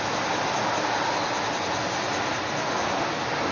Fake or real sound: real